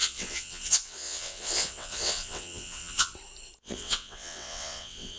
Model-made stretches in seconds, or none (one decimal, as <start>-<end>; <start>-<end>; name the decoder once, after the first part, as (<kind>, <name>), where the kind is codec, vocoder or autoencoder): 0.0-3.1 (vocoder, WaveNeXt); 3.6-5.2